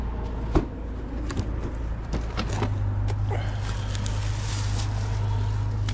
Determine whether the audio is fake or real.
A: real